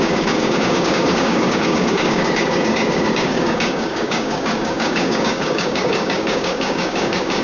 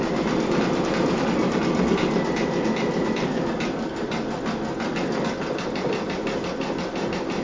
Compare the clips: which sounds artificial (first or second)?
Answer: first